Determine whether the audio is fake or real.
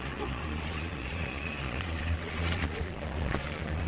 fake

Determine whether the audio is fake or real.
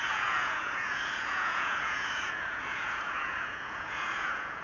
fake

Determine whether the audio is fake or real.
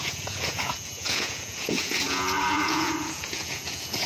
fake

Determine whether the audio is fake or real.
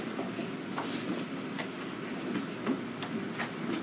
real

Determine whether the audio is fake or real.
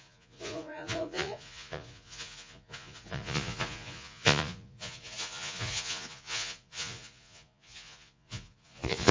fake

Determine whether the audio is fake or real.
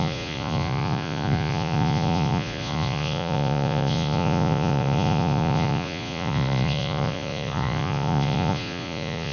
fake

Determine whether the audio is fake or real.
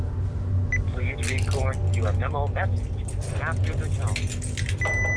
real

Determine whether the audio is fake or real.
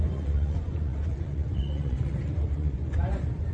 fake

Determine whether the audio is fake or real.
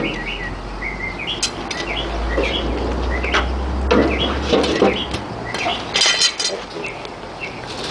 real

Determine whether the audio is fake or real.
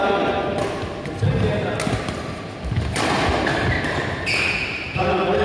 real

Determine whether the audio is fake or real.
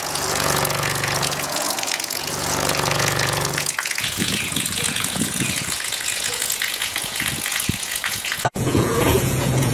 fake